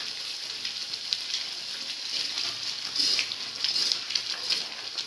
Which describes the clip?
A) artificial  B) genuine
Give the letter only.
B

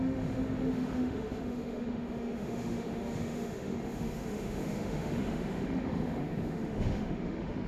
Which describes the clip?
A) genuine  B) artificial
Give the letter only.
B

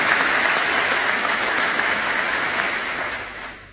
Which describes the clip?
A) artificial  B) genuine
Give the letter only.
A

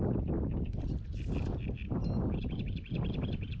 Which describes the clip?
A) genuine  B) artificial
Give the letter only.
A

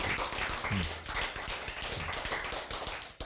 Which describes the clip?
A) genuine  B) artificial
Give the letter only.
A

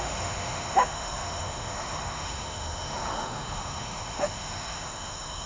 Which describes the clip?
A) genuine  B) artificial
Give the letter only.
B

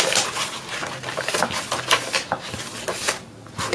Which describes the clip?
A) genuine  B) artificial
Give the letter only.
A